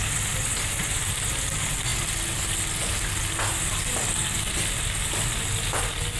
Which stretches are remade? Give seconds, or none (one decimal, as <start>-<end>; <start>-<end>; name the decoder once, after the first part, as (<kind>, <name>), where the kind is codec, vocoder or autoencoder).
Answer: none

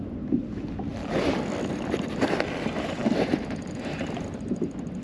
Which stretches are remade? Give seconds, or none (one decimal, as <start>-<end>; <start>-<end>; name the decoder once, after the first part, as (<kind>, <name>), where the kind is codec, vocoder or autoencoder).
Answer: none

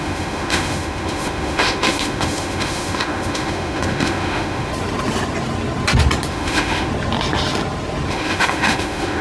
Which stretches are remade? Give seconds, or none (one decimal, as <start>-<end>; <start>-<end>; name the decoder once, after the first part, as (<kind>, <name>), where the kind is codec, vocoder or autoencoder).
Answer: 0.0-4.7 (autoencoder, DAC-VAE); 6.3-6.9; 8.1-9.2

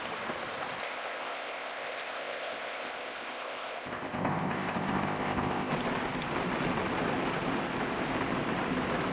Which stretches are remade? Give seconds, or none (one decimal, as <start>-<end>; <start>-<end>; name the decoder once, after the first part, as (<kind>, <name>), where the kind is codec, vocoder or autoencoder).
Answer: 0.8-5.7 (codec, ZipCodec)

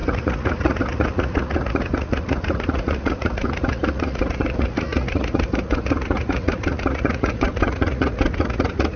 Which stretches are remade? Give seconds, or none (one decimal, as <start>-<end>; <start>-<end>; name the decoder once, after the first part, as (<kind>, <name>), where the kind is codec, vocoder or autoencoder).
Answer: 0.0-9.0 (vocoder, Vocos)